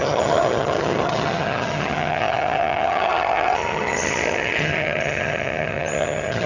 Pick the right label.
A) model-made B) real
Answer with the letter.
A